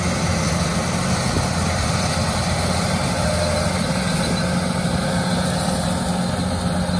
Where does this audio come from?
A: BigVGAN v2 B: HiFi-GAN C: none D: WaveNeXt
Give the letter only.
C